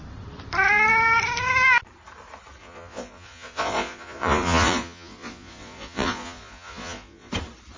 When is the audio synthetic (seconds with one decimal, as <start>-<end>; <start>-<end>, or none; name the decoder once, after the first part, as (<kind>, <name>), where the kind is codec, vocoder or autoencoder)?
2.6-7.3 (vocoder, Vocos)